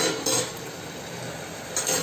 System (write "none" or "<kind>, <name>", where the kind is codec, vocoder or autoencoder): none